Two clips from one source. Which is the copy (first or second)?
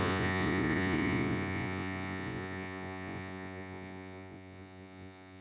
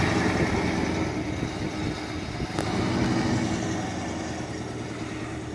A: first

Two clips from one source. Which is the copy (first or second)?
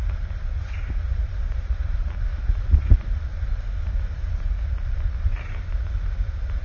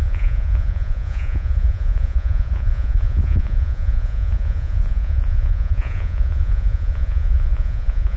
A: second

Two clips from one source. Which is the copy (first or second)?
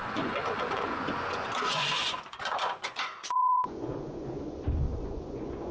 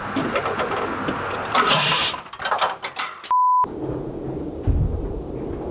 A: first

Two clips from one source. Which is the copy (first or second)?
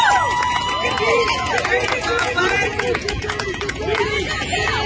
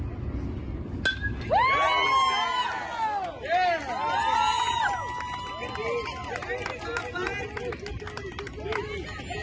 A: first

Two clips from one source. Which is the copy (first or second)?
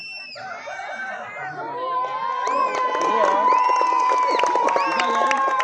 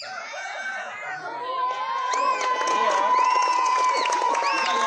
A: second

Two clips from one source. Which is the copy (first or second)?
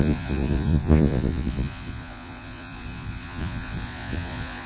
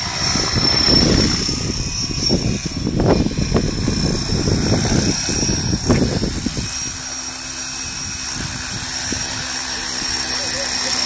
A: first